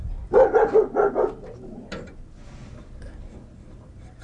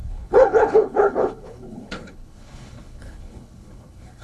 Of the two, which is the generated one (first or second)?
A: second